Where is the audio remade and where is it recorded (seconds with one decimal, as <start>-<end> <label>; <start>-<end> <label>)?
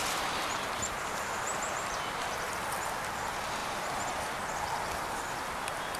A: 0.0-2.5 remade; 2.5-3.6 recorded; 3.6-4.4 remade; 4.4-6.0 recorded